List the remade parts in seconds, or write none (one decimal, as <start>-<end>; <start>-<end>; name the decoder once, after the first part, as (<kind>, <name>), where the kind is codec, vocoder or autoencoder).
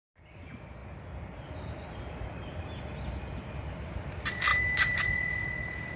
0.8-3.9 (vocoder, BigVGAN v2); 4.5-5.0